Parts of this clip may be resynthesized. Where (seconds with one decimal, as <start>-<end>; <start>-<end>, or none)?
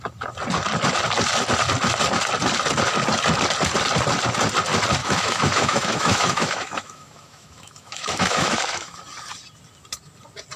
5.0-9.0